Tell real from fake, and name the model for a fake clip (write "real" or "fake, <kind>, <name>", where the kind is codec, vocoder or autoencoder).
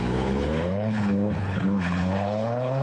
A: fake, codec, HILCodec